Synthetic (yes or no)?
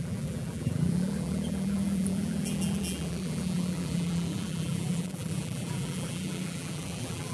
yes